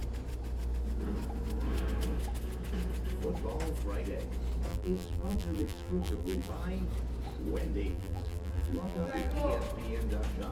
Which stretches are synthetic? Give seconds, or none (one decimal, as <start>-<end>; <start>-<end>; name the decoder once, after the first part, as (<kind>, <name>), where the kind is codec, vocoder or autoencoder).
4.7-6.5 (vocoder, BigVGAN v2); 7.9-9.3